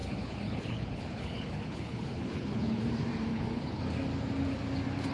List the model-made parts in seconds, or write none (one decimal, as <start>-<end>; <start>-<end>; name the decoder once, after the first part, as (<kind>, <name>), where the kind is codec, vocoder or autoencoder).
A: 0.0-2.8 (codec, HILCodec); 3.3-3.8